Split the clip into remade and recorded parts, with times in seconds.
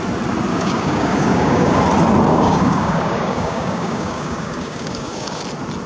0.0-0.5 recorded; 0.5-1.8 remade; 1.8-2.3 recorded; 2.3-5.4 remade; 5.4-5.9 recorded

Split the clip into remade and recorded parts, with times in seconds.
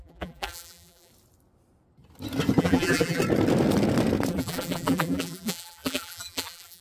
0.0-1.1 remade; 1.1-2.6 recorded; 2.6-3.2 remade; 3.2-4.3 recorded; 4.3-6.8 remade